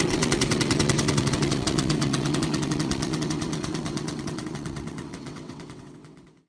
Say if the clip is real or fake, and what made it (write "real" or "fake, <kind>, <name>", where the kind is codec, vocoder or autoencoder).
fake, vocoder, WaveNeXt